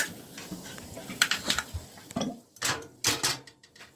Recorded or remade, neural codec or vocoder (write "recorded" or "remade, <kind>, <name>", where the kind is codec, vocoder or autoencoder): remade, vocoder, BigVGAN v2